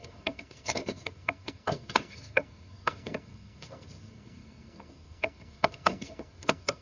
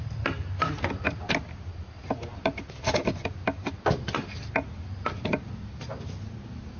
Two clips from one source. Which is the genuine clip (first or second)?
second